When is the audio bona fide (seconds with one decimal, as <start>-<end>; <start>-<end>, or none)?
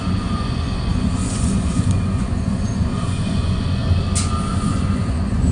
3.8-4.5